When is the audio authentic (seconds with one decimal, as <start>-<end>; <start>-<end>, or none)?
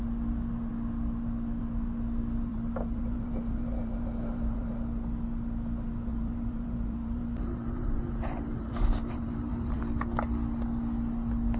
0.0-2.5; 4.7-6.1; 9.8-11.6